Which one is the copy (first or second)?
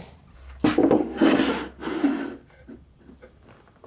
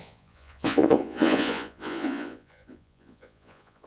second